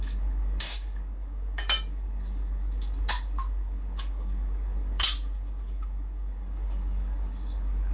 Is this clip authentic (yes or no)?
no